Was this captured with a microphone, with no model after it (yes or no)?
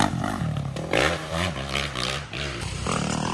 no